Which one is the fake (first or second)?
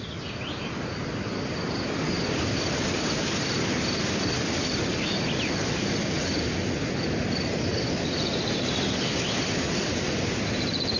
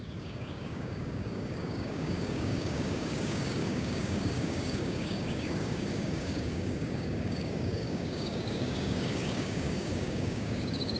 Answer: second